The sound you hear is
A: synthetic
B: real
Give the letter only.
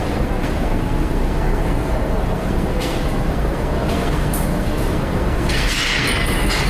A